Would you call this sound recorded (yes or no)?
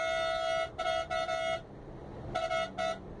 yes